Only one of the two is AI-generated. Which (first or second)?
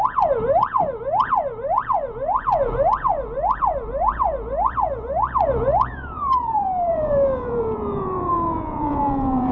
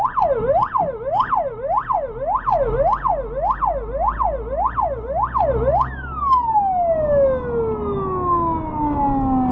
first